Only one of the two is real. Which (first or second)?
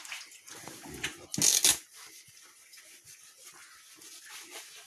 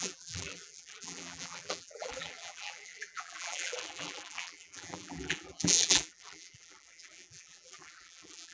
first